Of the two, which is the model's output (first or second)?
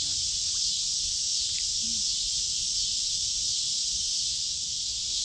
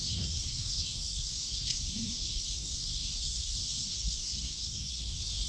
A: second